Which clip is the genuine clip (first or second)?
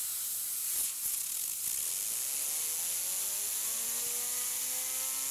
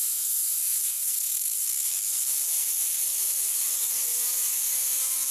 first